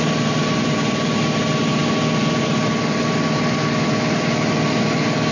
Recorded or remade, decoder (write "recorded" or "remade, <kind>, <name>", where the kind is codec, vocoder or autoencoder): recorded